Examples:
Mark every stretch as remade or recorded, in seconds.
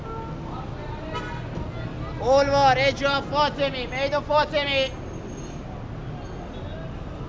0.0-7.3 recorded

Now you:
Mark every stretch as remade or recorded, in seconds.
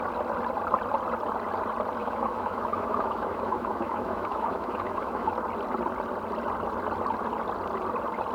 0.0-2.0 recorded; 2.0-5.3 remade; 5.3-8.3 recorded